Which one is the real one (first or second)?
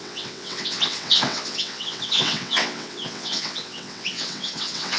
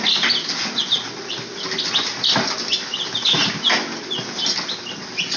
second